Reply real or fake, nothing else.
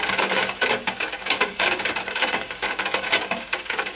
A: fake